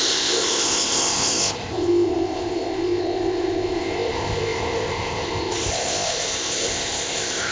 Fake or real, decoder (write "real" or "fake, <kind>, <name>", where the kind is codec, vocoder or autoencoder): fake, codec, ZipCodec